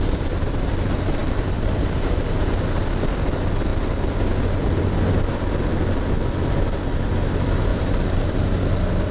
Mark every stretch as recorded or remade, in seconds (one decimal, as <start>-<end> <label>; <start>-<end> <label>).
0.0-1.2 recorded; 1.2-2.5 remade; 2.5-7.7 recorded; 7.7-8.5 remade; 8.5-9.1 recorded

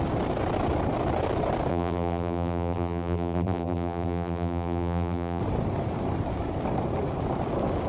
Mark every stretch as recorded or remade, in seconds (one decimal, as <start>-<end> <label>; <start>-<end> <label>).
0.0-1.7 recorded; 1.7-5.4 remade; 5.4-7.9 recorded

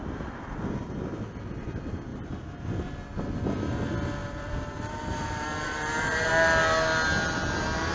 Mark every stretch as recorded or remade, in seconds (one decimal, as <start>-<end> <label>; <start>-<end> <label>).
0.0-2.1 recorded; 2.1-2.9 remade; 2.9-4.2 recorded; 4.2-6.3 remade; 6.3-7.9 recorded

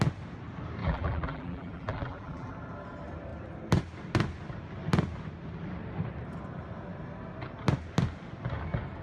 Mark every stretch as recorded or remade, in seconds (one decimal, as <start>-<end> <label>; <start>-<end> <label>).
0.0-0.8 recorded; 0.8-2.5 remade; 2.5-9.0 recorded

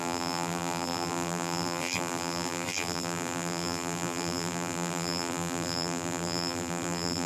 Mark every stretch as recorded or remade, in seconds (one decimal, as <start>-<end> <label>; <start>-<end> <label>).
0.0-7.3 remade

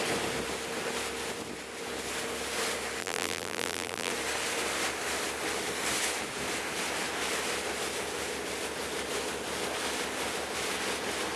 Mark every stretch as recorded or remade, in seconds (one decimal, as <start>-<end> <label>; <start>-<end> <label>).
0.0-3.0 recorded; 3.0-4.1 remade; 4.1-11.4 recorded

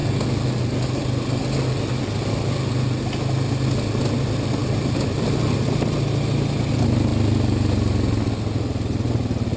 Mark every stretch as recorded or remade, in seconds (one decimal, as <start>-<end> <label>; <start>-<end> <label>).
0.0-4.6 recorded; 4.6-5.5 remade; 5.5-9.6 recorded

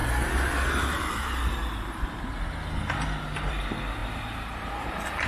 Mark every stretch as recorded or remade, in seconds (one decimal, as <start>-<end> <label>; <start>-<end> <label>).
0.0-1.0 recorded; 1.0-1.6 remade; 1.6-3.5 recorded; 3.5-5.3 remade